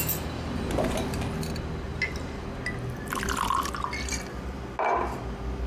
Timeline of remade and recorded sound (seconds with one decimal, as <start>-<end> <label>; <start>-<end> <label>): 0.0-5.7 recorded